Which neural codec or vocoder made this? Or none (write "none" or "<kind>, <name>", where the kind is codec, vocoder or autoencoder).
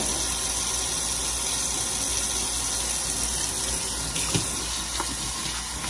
none